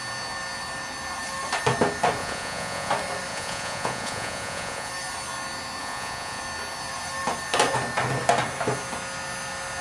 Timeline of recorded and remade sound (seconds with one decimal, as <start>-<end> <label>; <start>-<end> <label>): 0.0-2.2 recorded; 2.2-2.9 remade; 2.9-3.3 recorded; 3.3-4.9 remade; 4.9-5.8 recorded; 5.8-6.4 remade; 6.4-9.8 recorded